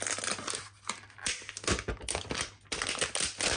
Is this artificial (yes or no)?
no